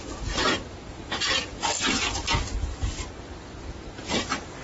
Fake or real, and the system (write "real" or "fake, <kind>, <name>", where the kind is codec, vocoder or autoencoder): real